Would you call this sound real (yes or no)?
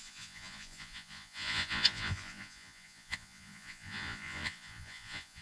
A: no